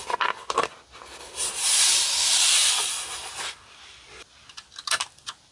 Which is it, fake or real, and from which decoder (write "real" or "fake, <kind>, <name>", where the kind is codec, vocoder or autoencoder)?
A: fake, vocoder, BigVGAN v2